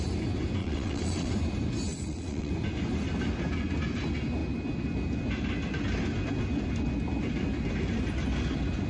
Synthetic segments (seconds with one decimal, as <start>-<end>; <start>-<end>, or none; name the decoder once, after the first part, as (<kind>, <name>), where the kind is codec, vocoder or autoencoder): 0.6-1.3 (vocoder, WaveNeXt); 1.9-2.5